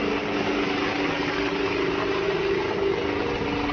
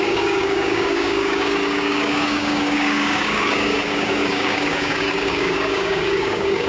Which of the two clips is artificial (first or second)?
second